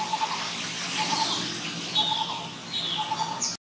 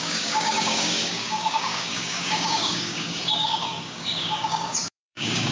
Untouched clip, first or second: first